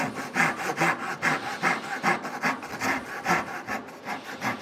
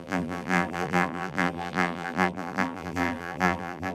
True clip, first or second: first